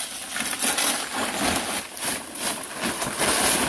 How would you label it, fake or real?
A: real